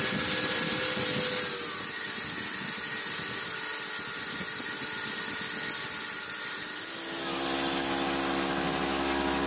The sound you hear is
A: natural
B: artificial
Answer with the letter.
A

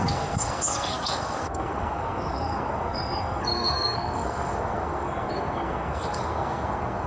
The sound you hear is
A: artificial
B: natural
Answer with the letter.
A